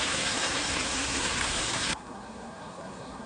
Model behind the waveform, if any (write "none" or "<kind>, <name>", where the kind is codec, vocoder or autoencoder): codec, SNAC